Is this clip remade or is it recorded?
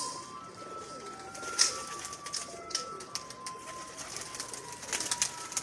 recorded